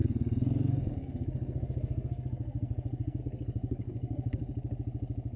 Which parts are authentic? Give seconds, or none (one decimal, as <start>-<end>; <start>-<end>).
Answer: 4.5-5.4